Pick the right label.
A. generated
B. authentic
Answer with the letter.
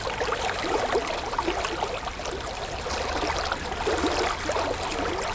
B